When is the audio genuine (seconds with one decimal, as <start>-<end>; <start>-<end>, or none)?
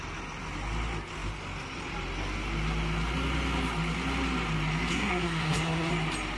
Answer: 0.0-4.9; 5.9-6.4